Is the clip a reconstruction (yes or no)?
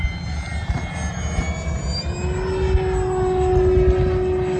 no